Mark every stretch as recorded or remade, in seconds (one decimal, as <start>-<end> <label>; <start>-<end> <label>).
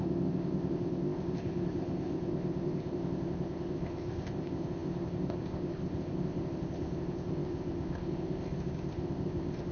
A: 0.0-9.7 remade